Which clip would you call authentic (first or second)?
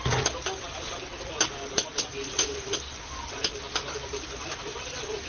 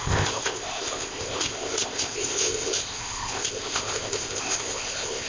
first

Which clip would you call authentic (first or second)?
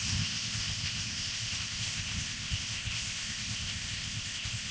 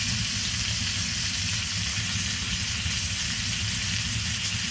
second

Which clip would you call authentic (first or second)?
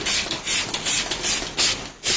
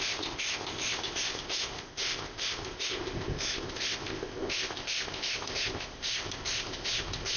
first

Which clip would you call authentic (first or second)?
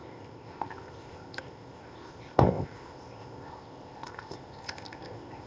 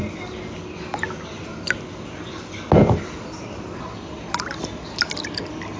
second